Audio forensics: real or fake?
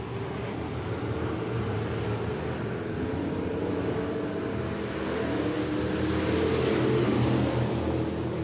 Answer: real